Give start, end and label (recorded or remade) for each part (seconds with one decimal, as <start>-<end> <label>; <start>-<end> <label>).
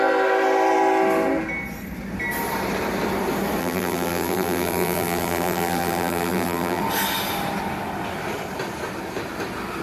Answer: 0.0-3.6 recorded; 3.6-6.8 remade; 6.8-9.8 recorded